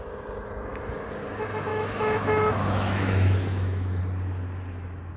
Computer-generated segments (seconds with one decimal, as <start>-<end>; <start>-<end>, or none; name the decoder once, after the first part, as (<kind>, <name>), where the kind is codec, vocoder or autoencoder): 1.7-4.0 (autoencoder, DAC-VAE)